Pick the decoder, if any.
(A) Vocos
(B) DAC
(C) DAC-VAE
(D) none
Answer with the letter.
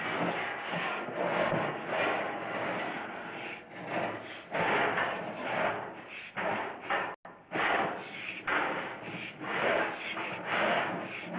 D